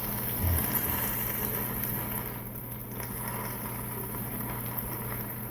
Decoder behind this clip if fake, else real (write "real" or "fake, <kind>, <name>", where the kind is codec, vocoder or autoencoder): real